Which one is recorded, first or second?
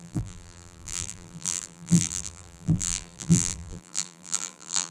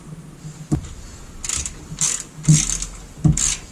second